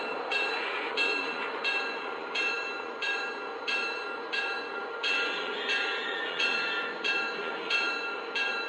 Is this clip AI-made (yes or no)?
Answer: yes